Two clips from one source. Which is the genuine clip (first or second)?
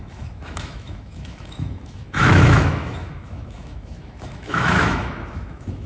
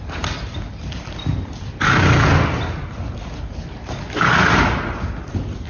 second